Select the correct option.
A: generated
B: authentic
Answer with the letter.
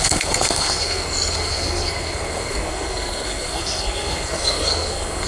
A